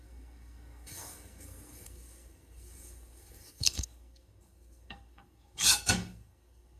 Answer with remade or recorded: remade